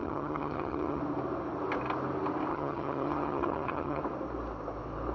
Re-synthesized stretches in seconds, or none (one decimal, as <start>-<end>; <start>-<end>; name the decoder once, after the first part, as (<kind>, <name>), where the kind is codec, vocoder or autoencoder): 0.0-1.0 (vocoder, HiFi-GAN); 2.5-4.0